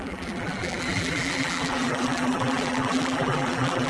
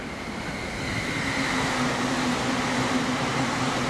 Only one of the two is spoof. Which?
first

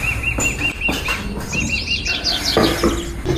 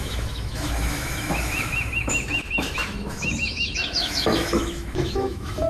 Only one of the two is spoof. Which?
second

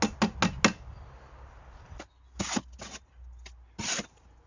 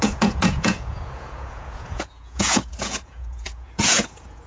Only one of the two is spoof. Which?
second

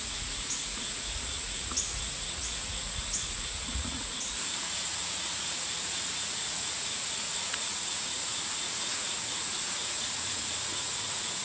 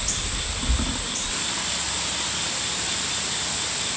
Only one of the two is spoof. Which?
first